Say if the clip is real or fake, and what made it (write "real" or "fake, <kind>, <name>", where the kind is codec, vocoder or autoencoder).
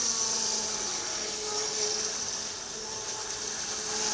real